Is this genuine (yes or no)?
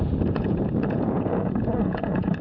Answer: no